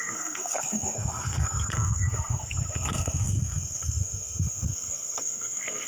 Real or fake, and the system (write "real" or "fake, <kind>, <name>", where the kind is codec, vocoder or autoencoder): fake, codec, SNAC